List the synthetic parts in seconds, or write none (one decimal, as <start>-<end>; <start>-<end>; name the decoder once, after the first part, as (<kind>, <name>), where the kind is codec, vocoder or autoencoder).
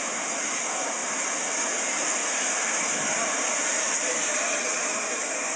1.0-1.7 (vocoder, BigVGAN v2); 2.2-5.6